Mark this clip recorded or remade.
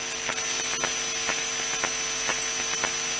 recorded